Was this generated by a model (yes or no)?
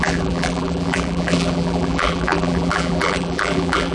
yes